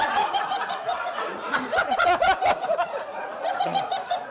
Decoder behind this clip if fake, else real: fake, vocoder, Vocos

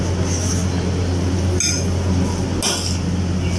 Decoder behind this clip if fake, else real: real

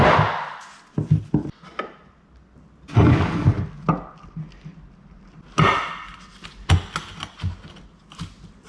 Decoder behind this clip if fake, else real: real